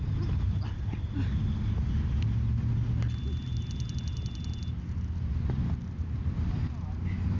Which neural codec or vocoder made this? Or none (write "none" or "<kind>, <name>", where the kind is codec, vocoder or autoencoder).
none